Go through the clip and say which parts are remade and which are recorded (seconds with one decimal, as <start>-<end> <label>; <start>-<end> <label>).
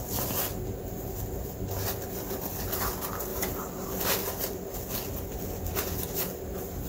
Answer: 0.0-3.3 recorded; 3.3-4.1 remade; 4.1-6.9 recorded